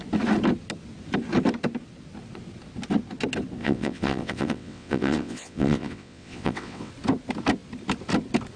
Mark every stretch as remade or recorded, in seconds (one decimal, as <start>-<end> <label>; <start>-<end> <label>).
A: 0.0-3.6 recorded; 3.6-6.9 remade; 6.9-8.6 recorded